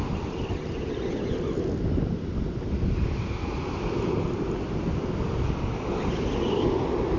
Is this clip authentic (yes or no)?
yes